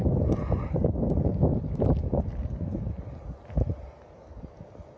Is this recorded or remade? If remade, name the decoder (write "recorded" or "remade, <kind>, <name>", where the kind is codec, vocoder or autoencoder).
recorded